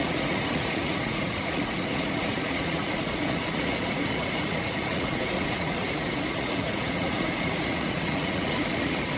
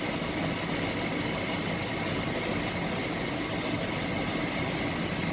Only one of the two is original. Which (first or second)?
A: second